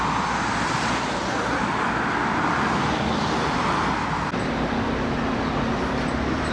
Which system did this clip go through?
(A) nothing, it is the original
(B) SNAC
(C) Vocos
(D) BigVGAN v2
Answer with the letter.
A